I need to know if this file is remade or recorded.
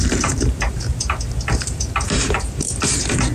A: remade